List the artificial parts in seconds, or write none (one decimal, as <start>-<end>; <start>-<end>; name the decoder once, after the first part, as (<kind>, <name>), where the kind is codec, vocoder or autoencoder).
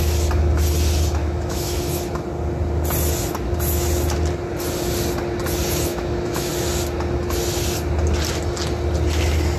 1.2-1.8 (autoencoder, DAC-VAE); 5.9-6.5